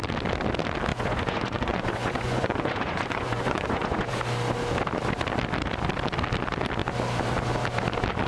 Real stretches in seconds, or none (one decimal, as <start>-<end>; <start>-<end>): 0.0-0.9; 4.2-8.3